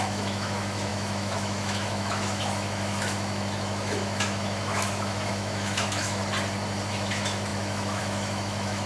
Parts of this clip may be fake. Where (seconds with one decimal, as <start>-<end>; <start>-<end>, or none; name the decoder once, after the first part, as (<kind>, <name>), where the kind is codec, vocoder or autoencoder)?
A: 0.0-6.2 (autoencoder, DAC-VAE); 6.9-8.9